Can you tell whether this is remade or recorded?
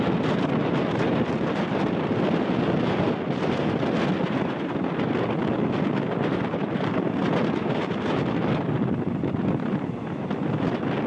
recorded